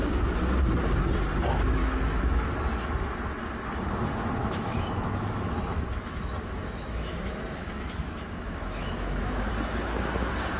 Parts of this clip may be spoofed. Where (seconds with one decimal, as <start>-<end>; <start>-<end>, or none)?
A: 1.8-2.5; 4.4-9.5